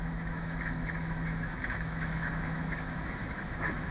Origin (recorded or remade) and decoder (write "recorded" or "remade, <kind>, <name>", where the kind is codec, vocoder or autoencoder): remade, autoencoder, DAC-VAE